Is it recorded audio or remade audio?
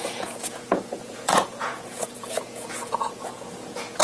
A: remade